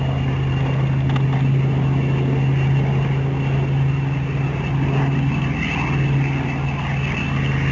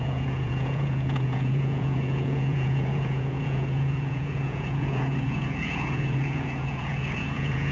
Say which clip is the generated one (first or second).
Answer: second